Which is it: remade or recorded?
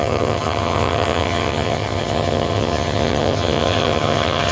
remade